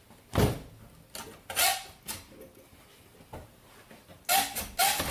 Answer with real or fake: real